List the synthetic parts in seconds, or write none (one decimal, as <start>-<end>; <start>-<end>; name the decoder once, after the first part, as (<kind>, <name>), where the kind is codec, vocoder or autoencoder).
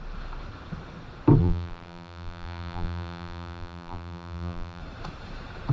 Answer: 1.4-4.8 (vocoder, BigVGAN v2)